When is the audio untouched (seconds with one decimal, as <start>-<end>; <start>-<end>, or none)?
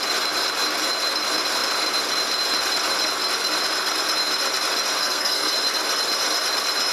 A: 0.0-5.0; 5.5-6.9